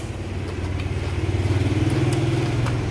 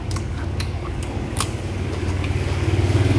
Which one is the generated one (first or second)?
second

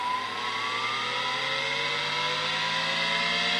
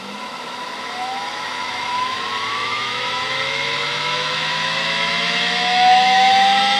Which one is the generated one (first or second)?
second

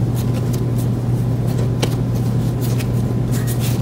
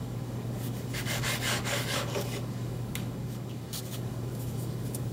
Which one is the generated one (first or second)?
second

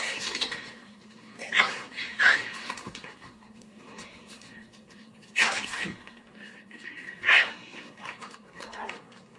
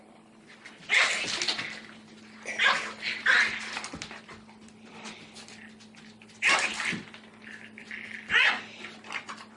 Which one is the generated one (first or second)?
first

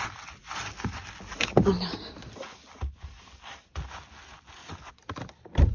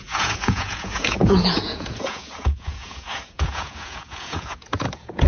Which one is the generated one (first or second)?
second